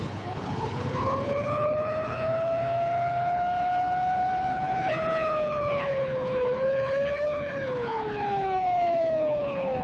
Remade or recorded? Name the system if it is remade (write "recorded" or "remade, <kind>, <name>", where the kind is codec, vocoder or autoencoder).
remade, codec, HILCodec